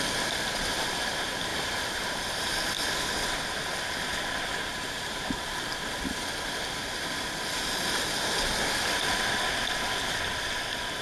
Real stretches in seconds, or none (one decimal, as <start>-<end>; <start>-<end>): 0.0-1.5; 2.5-4.7; 5.8-11.0

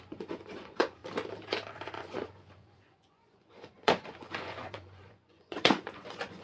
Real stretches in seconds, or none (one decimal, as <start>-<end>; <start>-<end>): 1.0-1.7

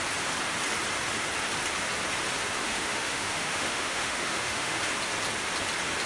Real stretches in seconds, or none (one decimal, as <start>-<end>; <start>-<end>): 0.0-2.6; 4.8-6.1

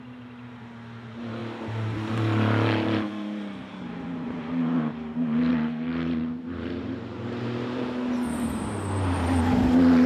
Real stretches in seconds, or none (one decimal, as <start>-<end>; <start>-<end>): 1.4-2.1

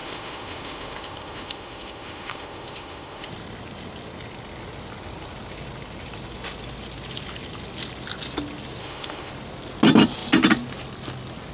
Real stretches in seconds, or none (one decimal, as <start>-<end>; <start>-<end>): 3.3-8.8; 9.3-11.5

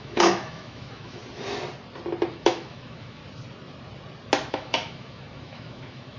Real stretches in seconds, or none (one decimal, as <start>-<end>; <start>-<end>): 1.2-2.3; 3.2-4.5

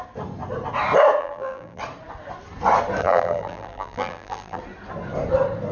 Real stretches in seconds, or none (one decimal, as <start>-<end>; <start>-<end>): 0.0-1.2; 1.8-3.0; 4.6-5.7